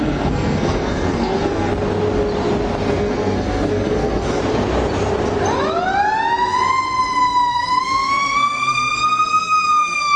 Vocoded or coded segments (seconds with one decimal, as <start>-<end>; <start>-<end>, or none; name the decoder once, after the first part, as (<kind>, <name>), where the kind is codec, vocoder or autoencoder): 0.0-1.7 (codec, SNAC); 2.9-4.4; 7.5-10.2